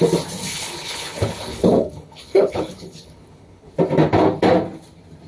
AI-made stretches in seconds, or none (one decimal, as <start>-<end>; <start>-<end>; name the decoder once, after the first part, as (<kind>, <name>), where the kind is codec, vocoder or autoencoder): 0.5-3.7 (codec, HILCodec)